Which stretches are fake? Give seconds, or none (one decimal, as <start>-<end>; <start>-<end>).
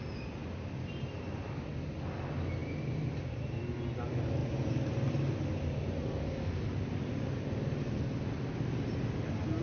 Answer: none